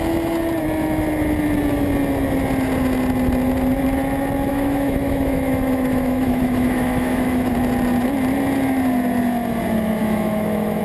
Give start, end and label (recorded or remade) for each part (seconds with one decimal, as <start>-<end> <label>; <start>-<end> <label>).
0.0-4.5 recorded; 4.5-7.5 remade; 7.5-10.0 recorded; 10.0-10.8 remade